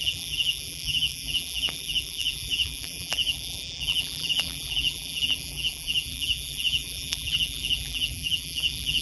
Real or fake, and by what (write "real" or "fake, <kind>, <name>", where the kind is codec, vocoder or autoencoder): fake, vocoder, BigVGAN v2